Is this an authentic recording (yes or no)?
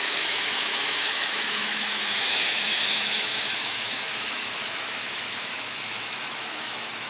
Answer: no